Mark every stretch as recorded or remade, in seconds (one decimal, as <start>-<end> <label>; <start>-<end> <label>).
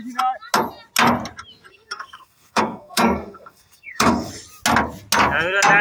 0.0-1.7 recorded; 1.7-4.3 remade; 4.3-5.8 recorded